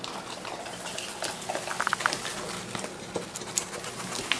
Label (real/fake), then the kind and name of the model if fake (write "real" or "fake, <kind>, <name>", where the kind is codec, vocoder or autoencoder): real